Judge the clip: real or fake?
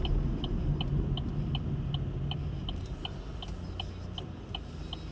real